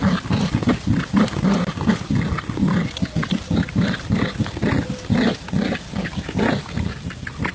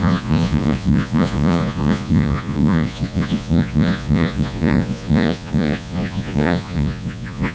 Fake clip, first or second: second